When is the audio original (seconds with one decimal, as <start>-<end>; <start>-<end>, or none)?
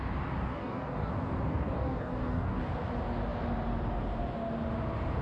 0.0-0.5; 1.1-1.5; 2.6-5.2